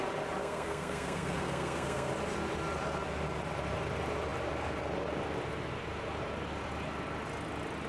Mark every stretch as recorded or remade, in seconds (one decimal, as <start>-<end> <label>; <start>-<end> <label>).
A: 0.0-0.4 recorded; 0.4-2.1 remade; 2.1-7.9 recorded